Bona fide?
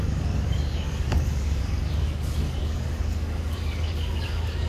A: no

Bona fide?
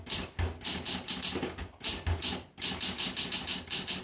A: yes